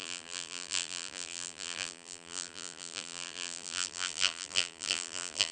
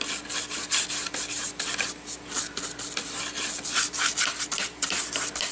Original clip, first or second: second